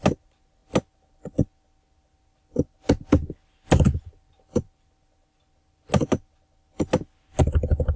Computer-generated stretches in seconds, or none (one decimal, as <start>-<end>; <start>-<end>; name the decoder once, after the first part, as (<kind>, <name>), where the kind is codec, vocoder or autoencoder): none